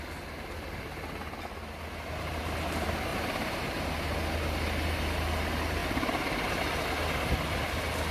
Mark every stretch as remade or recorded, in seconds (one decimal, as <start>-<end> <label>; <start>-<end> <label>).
0.0-3.1 recorded; 3.1-3.8 remade; 3.8-5.8 recorded; 5.8-6.6 remade; 6.6-8.1 recorded